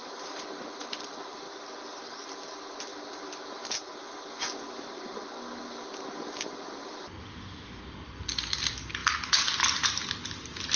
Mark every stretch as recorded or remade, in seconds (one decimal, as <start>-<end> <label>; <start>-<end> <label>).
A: 0.0-7.2 recorded; 7.2-7.8 remade; 7.8-10.8 recorded